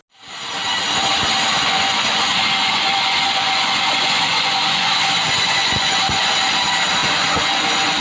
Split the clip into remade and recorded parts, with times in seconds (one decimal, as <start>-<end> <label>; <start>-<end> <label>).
0.0-1.5 recorded; 1.5-6.3 remade; 6.3-7.0 recorded; 7.0-8.0 remade